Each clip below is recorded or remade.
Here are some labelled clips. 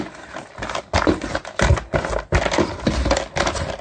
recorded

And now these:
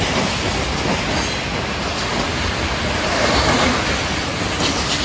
recorded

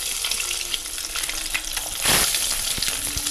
recorded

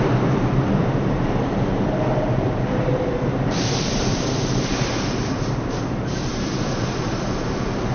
remade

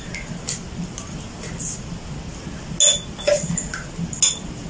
recorded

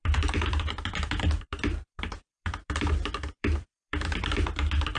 remade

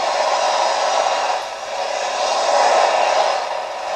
recorded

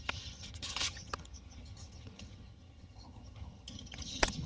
remade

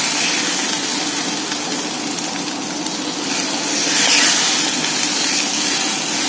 recorded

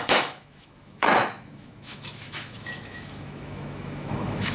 remade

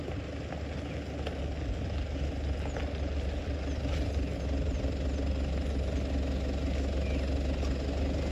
recorded